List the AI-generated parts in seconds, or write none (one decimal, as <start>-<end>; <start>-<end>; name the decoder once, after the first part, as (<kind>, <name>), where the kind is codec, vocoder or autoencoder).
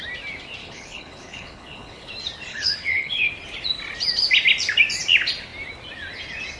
0.6-2.1 (codec, HILCodec); 2.5-3.3